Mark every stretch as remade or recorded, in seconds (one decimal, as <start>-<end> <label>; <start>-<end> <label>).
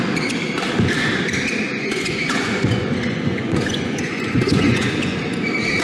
0.0-1.7 recorded; 1.7-5.2 remade; 5.2-5.8 recorded